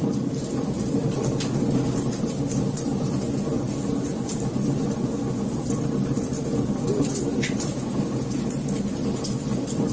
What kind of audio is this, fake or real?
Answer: real